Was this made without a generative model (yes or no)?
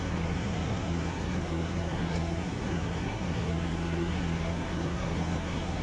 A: no